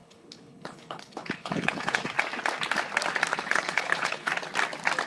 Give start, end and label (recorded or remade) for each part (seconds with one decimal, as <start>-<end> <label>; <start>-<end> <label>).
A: 0.0-2.0 remade; 2.0-3.3 recorded; 3.3-4.3 remade; 4.3-5.1 recorded